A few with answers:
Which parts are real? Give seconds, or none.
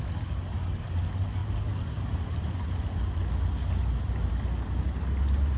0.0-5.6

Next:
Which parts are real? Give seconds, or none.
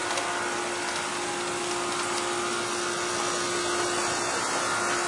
0.0-5.1